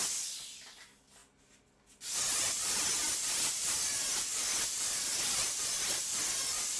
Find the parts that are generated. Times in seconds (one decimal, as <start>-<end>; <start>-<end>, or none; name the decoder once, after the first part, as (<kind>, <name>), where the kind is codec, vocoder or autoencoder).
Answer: none